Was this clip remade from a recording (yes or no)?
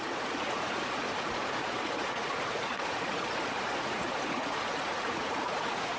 yes